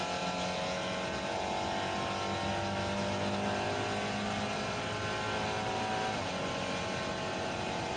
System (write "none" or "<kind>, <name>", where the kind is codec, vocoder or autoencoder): none